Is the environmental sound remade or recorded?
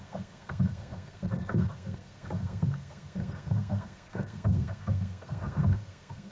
remade